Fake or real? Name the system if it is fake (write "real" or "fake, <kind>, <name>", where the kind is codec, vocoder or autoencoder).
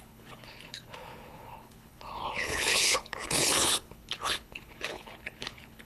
fake, codec, HILCodec